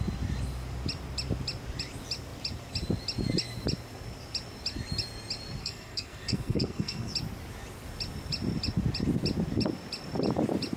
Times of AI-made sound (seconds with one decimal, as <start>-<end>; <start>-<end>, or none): 5.6-7.1